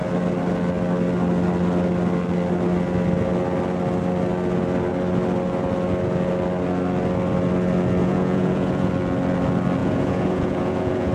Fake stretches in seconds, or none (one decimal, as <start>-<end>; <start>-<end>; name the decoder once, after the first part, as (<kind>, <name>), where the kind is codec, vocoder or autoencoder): 8.0-8.9 (vocoder, Vocos); 9.8-11.1